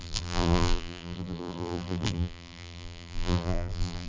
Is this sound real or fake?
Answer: fake